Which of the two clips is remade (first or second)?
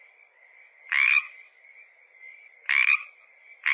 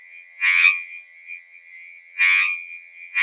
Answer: second